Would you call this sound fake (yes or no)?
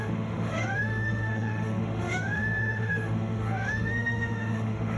yes